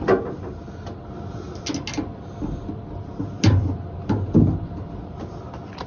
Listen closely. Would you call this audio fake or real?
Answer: real